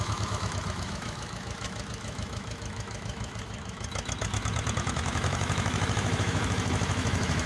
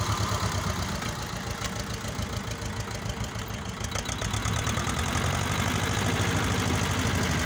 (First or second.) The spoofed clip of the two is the first